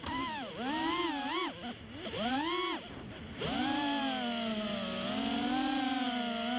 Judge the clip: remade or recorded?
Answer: recorded